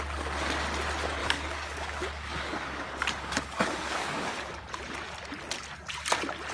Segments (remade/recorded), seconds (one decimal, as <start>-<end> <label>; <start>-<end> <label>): 0.0-1.2 recorded; 1.2-4.6 remade; 4.6-6.5 recorded